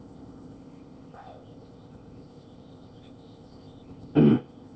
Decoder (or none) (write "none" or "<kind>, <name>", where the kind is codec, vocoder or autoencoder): codec, ZipCodec